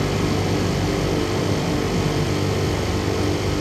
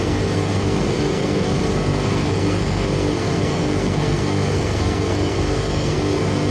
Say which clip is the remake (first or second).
second